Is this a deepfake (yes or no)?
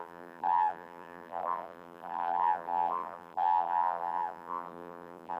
yes